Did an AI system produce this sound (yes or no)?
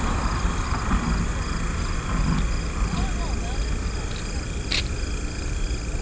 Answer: no